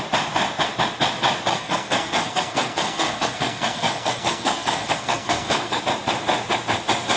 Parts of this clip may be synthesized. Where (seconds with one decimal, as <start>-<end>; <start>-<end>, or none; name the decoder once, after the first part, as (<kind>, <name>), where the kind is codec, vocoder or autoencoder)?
1.5-5.8 (codec, SNAC)